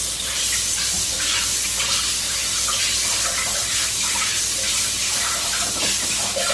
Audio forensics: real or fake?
fake